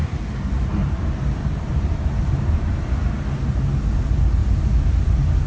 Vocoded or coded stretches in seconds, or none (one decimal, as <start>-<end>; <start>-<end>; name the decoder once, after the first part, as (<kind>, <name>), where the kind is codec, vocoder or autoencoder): 0.0-0.6 (vocoder, BigVGAN v2); 1.4-3.5